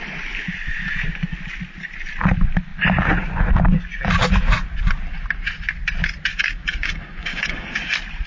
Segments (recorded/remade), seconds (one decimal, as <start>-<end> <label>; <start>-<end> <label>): 0.0-6.3 recorded; 6.3-7.9 remade; 7.9-8.3 recorded